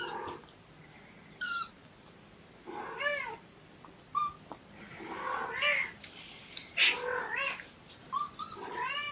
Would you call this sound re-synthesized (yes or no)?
no